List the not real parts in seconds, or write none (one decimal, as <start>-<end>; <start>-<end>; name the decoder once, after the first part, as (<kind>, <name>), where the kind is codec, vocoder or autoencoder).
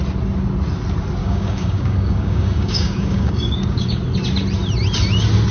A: 1.2-4.0 (codec, DAC)